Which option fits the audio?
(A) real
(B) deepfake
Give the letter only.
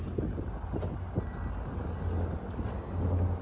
A